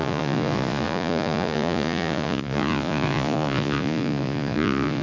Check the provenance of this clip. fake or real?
fake